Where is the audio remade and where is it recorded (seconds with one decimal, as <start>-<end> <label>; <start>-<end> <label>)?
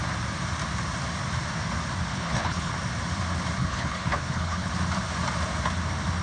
0.0-2.1 recorded; 2.1-2.7 remade; 2.7-3.6 recorded; 3.6-4.7 remade; 4.7-6.2 recorded